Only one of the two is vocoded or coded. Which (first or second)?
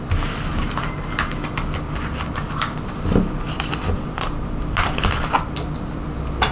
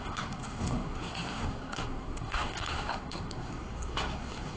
second